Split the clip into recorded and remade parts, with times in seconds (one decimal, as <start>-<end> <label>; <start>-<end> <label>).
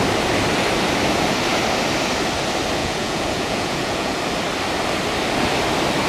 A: 0.0-2.8 recorded; 2.8-4.2 remade; 4.2-6.1 recorded